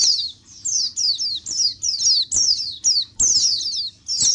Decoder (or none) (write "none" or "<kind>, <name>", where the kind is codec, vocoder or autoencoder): none